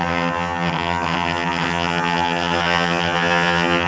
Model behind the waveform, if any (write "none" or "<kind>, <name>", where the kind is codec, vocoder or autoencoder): vocoder, HiFi-GAN